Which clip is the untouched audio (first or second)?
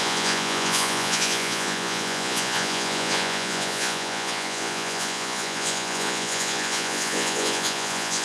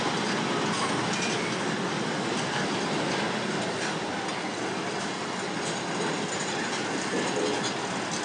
second